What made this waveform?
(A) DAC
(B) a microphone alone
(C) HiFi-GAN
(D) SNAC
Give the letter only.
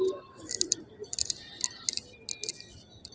B